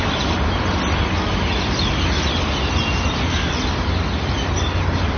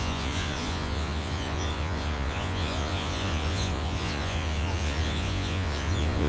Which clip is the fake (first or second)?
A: second